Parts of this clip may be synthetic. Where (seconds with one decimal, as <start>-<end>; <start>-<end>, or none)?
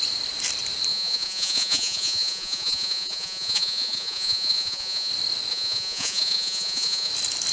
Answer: 0.9-5.1; 5.5-7.1